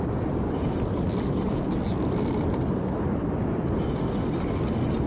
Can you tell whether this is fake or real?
real